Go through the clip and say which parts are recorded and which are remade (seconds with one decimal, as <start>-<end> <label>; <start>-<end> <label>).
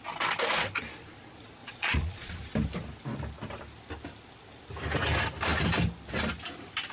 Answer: 0.0-1.6 recorded; 1.6-2.4 remade; 2.4-6.9 recorded